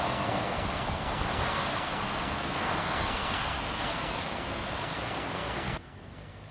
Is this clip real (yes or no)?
no